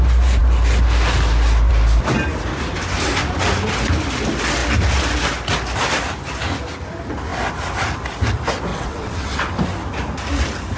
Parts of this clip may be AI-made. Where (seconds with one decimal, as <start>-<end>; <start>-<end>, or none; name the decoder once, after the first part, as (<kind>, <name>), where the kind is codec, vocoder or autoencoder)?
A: 8.7-9.5 (vocoder, WaveNeXt)

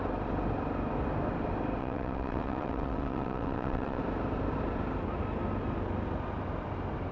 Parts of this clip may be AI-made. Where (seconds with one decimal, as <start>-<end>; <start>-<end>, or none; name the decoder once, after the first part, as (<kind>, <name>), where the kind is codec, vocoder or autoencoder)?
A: 1.8-4.0 (vocoder, WaveNeXt)

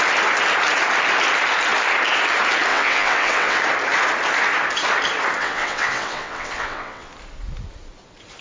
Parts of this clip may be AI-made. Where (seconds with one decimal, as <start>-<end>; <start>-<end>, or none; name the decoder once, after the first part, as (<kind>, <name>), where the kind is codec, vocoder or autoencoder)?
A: 2.7-3.6 (vocoder, WaveNeXt); 5.4-7.1

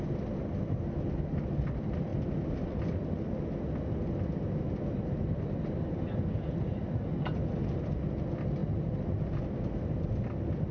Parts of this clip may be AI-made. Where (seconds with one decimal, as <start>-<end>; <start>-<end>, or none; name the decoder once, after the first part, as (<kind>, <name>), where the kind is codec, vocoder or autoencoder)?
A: none